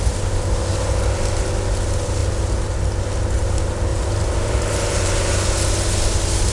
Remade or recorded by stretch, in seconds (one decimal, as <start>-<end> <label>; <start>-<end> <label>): 0.0-3.9 recorded; 3.9-5.3 remade; 5.3-6.5 recorded